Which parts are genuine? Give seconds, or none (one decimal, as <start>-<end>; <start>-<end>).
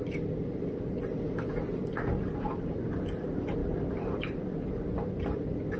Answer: 0.0-5.8